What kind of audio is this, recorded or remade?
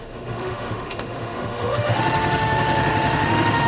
remade